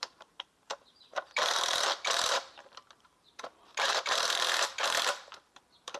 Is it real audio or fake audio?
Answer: fake